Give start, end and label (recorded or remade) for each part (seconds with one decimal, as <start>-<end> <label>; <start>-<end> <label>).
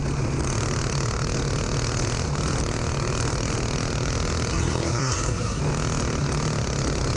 0.0-4.5 recorded; 4.5-5.6 remade; 5.6-7.2 recorded